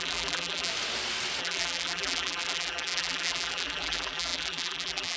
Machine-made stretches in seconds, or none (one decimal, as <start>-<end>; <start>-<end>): 0.0-0.7; 1.4-5.2